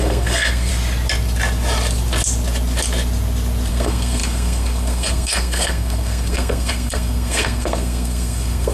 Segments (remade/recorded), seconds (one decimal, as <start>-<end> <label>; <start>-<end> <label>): 0.0-0.7 remade; 0.7-3.7 recorded; 3.7-8.7 remade